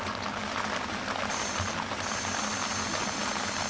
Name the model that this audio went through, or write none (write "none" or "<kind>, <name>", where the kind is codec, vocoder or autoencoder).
none